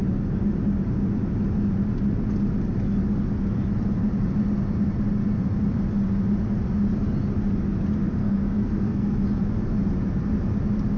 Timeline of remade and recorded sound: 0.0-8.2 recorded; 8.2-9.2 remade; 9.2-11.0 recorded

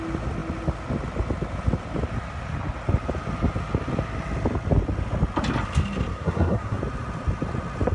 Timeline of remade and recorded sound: 0.0-6.1 recorded; 6.1-6.8 remade; 6.8-7.9 recorded

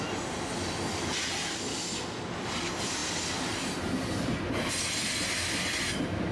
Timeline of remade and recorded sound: 0.0-6.3 recorded

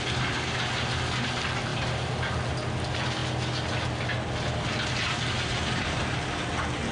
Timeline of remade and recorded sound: 0.0-6.9 recorded

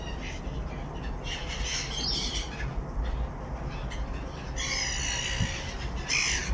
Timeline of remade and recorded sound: 0.0-6.5 recorded

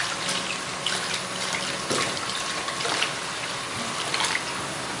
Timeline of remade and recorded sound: 0.0-5.0 recorded